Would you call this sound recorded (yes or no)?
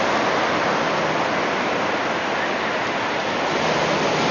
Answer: yes